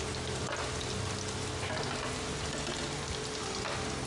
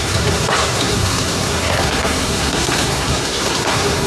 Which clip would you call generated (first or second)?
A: second